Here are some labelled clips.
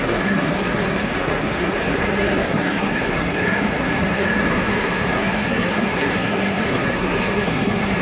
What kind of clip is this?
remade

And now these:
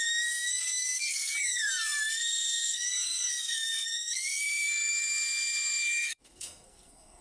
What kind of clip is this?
remade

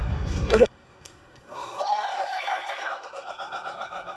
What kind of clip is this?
remade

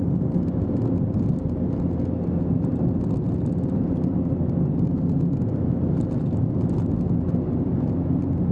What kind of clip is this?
recorded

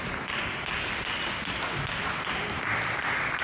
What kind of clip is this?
recorded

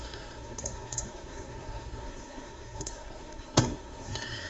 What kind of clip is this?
remade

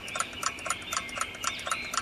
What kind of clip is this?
recorded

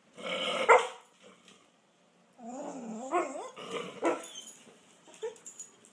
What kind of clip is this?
recorded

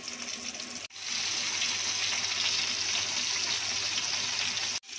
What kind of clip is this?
recorded